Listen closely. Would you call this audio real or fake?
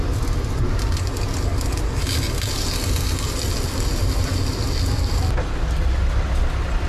real